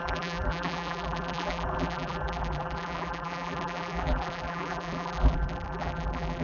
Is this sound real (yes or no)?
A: no